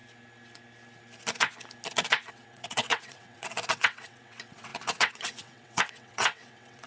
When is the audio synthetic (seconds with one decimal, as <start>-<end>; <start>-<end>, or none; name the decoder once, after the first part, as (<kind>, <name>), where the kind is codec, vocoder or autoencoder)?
2.3-6.9 (vocoder, WaveNeXt)